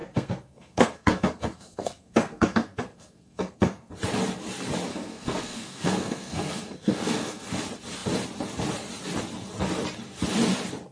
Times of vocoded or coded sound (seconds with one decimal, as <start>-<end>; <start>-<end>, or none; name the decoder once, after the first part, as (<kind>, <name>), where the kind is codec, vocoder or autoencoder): 0.0-3.9 (codec, SNAC); 4.9-7.5